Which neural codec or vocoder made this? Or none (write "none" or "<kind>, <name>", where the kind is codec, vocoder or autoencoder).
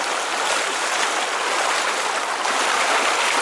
none